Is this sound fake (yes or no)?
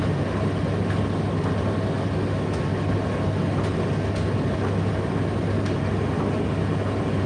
no